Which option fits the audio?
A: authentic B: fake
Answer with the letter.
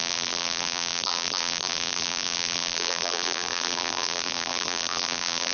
B